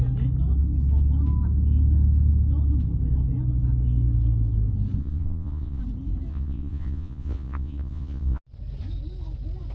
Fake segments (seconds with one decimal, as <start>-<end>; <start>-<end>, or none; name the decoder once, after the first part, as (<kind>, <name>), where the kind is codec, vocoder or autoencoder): 5.0-5.8 (vocoder, Vocos); 6.3-8.4